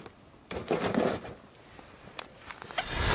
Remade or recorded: recorded